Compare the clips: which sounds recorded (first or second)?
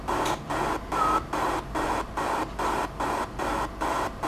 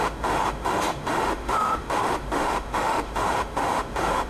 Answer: first